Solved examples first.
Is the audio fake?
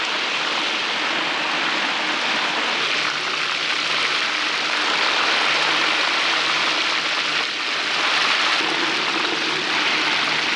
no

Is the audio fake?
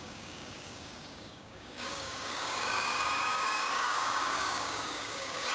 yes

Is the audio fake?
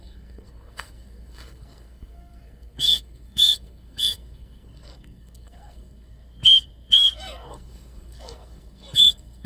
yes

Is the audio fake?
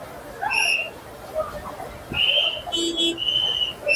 no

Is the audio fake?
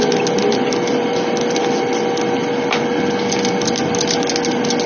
no